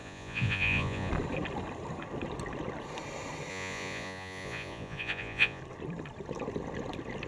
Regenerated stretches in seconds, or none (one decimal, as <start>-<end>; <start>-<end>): 0.0-1.1; 3.5-5.6